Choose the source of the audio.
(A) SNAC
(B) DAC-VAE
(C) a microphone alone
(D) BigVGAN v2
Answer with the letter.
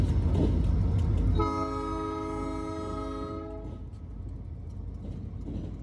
C